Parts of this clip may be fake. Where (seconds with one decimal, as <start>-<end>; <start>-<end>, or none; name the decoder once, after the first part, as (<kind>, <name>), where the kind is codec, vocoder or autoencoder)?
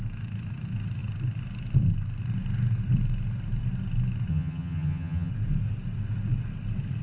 4.3-5.3 (vocoder, HiFi-GAN)